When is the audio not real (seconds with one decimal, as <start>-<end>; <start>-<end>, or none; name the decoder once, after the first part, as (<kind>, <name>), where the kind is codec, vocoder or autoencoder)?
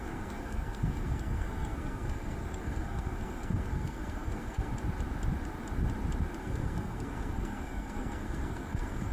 0.0-4.7 (codec, SNAC); 6.4-9.1